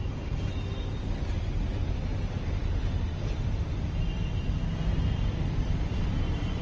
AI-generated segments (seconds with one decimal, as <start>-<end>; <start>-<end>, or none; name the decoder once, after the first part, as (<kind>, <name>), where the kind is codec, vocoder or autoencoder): none